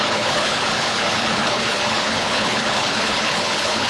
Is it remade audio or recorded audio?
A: remade